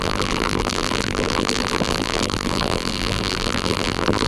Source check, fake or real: fake